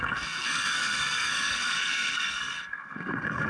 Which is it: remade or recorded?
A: remade